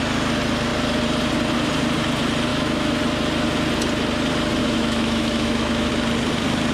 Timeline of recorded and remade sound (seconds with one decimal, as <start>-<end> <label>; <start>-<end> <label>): 0.0-2.5 recorded; 2.5-3.0 remade; 3.0-4.6 recorded; 4.6-5.9 remade; 5.9-6.7 recorded